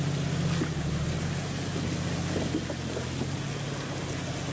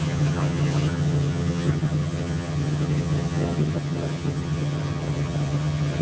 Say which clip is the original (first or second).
first